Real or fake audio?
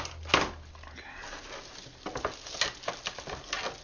real